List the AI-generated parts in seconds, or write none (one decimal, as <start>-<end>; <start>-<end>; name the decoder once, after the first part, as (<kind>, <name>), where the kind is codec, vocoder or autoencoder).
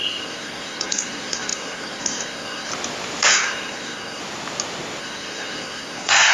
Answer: 0.0-2.7 (codec, SNAC); 3.3-4.2; 5.0-6.3